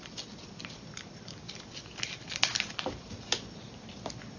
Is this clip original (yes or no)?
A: yes